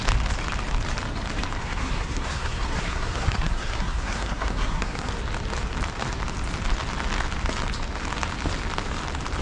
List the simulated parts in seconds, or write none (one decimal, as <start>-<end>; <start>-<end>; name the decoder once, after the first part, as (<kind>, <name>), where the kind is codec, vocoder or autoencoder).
1.6-5.1 (codec, SNAC)